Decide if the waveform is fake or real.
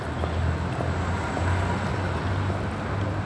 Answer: real